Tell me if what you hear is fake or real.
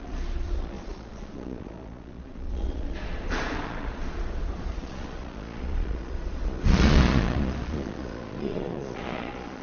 fake